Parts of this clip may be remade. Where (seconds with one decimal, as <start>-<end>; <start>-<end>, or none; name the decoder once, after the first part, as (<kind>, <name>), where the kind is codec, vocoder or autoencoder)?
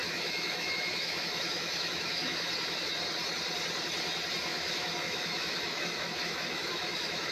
0.0-2.5 (autoencoder, DAC-VAE); 4.5-7.3